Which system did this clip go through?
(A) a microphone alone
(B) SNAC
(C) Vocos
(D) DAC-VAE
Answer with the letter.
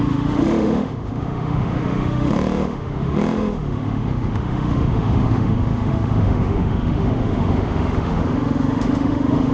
D